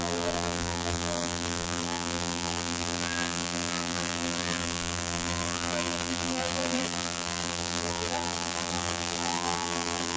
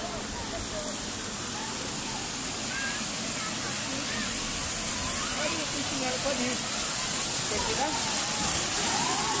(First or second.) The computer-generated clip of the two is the first